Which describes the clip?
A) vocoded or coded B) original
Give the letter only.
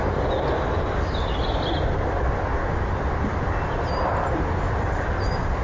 B